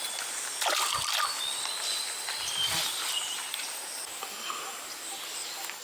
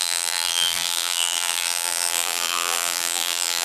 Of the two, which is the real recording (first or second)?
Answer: first